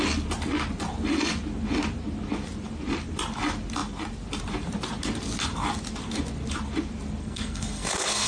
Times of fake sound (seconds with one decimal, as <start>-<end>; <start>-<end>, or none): 7.2-8.3